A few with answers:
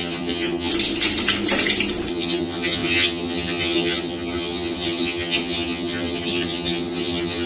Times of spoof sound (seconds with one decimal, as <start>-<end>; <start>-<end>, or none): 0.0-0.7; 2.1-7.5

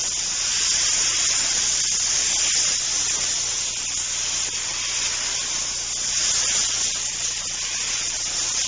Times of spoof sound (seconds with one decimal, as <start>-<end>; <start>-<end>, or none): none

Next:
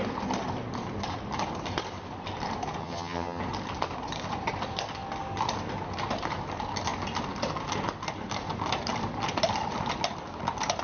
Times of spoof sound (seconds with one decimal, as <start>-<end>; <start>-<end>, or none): 2.8-3.4

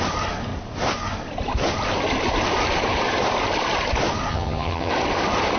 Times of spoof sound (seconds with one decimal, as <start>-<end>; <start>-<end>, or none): 4.3-4.9

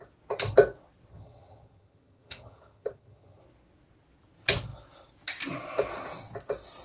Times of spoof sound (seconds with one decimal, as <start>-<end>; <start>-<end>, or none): 1.1-3.4

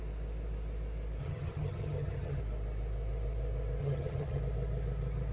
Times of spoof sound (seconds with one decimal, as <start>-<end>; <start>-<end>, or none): 1.2-2.4; 3.8-4.4

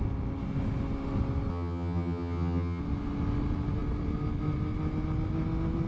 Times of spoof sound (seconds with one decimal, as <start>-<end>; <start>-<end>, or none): 1.5-2.8

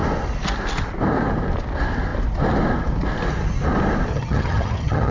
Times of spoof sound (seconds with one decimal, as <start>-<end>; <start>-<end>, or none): 4.1-5.1